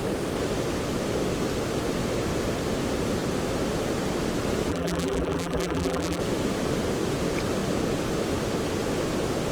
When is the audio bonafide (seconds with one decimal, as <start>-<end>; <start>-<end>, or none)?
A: 0.0-4.7; 6.2-9.5